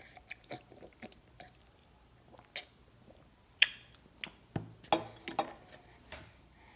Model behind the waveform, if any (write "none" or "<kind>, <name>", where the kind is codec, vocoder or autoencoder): none